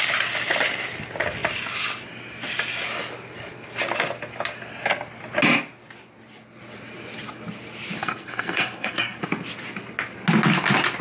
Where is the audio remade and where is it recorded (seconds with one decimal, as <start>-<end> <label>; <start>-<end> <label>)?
0.0-8.0 recorded; 8.0-9.2 remade; 9.2-11.0 recorded